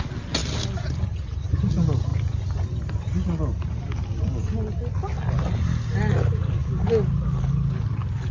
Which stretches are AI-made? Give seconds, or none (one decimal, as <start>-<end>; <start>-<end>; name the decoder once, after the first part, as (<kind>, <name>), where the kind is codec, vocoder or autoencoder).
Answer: none